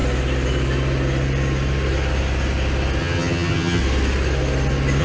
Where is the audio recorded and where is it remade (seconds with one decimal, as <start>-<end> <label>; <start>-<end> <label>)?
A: 0.0-3.0 recorded; 3.0-3.8 remade; 3.8-5.0 recorded